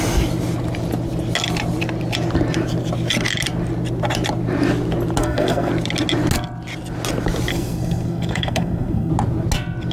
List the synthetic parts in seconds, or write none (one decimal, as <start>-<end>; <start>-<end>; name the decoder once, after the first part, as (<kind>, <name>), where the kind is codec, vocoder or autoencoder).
5.2-5.7 (codec, SNAC); 7.5-9.1